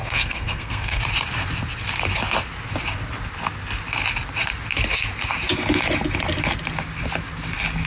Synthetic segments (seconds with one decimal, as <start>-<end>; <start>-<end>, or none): 0.0-1.0